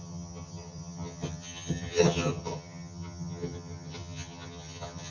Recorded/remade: remade